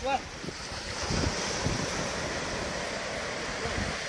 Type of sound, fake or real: real